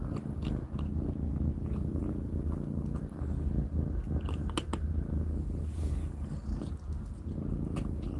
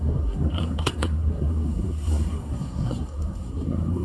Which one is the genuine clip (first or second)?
first